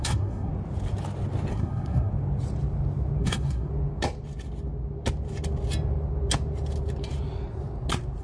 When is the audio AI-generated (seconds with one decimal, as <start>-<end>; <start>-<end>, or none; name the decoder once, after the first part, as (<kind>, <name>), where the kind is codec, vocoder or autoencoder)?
0.0-0.5 (codec, SNAC); 1.5-2.1; 3.2-3.7